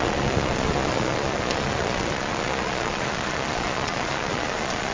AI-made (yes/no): yes